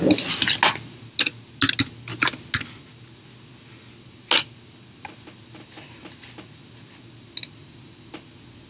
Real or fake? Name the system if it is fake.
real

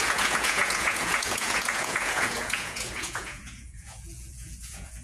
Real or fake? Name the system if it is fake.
fake, vocoder, Vocos